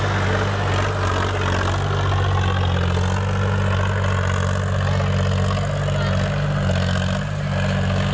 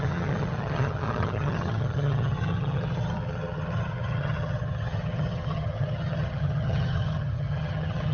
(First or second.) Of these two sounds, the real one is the first